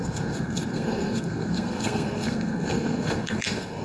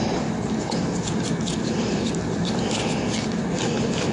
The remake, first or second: first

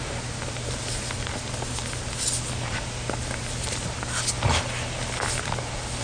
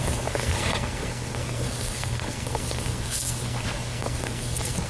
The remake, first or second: second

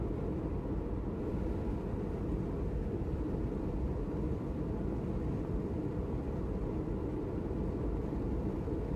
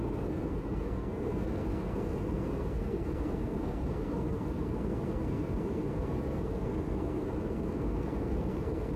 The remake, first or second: second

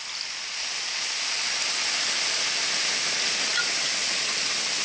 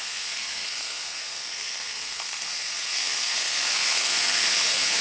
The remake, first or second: second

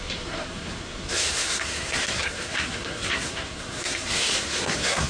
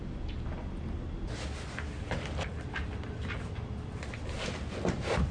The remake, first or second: first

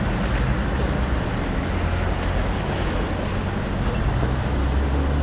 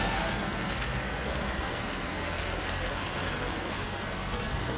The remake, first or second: second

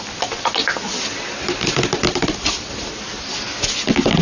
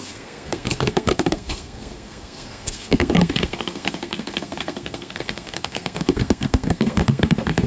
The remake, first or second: second